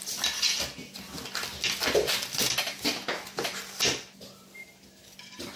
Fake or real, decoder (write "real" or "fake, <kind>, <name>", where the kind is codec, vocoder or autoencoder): real